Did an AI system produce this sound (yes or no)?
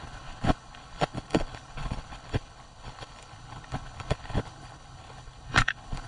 yes